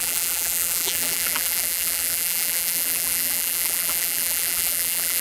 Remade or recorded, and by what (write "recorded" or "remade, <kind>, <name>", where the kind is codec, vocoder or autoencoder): remade, vocoder, BigVGAN v2